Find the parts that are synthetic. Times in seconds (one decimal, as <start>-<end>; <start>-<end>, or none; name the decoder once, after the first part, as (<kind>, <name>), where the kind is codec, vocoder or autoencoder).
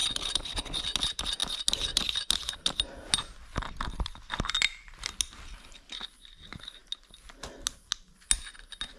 none